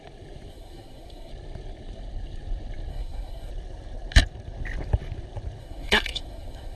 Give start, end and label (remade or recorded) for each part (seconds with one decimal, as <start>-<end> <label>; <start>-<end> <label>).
0.0-0.5 recorded; 0.5-1.3 remade; 1.3-2.9 recorded; 2.9-3.5 remade; 3.5-5.6 recorded; 5.6-6.8 remade